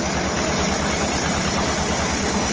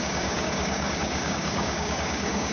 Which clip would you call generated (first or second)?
second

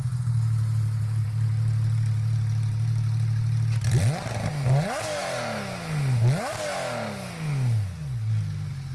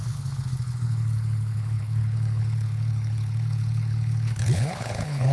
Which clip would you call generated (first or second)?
second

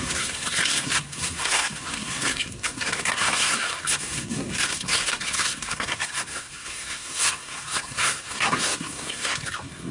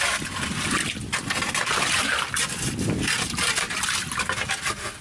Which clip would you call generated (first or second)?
first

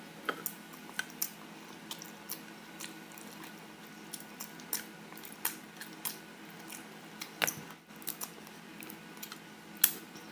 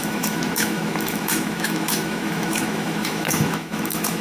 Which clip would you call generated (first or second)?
second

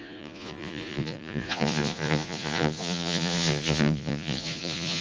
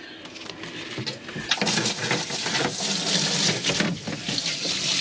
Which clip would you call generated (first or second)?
first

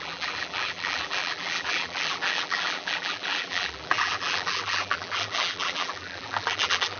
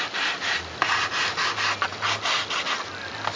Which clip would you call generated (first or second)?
first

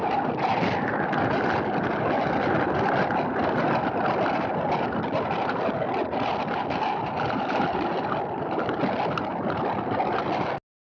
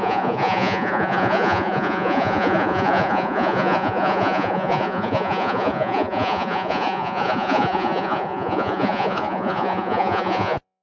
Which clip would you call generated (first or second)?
second